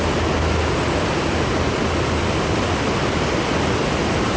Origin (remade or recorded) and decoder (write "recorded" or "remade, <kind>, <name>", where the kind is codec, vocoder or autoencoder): recorded